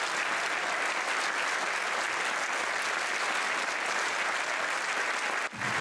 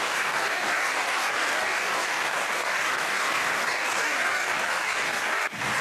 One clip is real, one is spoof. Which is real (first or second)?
first